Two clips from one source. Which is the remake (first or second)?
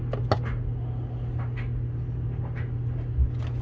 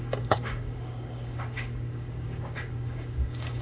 second